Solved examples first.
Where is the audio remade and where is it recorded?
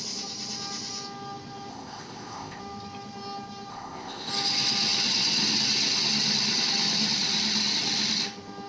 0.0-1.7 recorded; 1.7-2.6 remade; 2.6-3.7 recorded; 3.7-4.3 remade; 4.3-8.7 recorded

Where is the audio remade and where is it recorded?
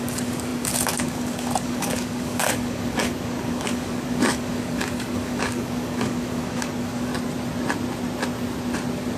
0.0-7.1 remade; 7.1-9.2 recorded